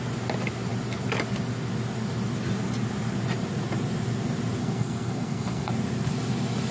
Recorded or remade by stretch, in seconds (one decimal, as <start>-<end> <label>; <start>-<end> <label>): 0.0-4.6 recorded; 4.6-5.7 remade; 5.7-6.7 recorded